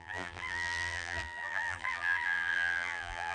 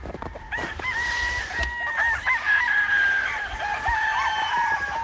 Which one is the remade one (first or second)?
first